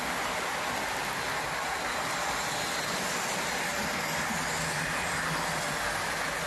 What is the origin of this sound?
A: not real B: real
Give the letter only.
B